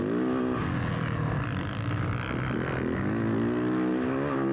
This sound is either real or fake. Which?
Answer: real